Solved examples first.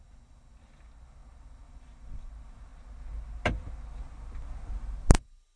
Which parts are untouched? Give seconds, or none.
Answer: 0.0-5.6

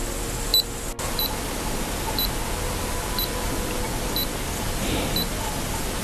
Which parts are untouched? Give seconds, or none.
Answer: 0.0-6.0